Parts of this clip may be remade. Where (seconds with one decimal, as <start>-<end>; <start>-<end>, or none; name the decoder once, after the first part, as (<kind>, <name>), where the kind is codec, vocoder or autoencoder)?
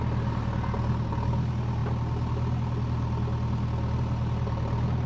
none